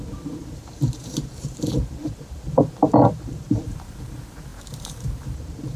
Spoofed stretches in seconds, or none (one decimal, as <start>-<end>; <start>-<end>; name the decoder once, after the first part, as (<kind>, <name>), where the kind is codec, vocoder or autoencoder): 0.0-5.8 (vocoder, BigVGAN v2)

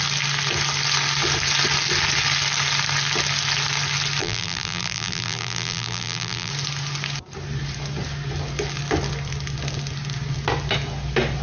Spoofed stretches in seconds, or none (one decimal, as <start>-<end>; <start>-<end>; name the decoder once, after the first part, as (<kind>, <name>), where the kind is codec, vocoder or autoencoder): 4.2-6.5 (vocoder, BigVGAN v2)

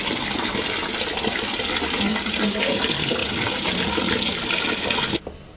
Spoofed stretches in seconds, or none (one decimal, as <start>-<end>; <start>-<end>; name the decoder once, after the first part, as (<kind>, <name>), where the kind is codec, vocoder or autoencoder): none

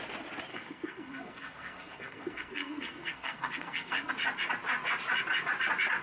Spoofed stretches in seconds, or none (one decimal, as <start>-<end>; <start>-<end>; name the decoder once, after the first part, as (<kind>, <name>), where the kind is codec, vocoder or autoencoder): 0.5-4.1 (codec, SNAC)

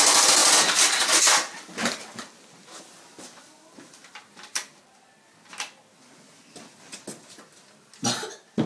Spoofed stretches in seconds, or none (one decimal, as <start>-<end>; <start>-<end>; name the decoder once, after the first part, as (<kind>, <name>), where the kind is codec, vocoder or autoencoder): none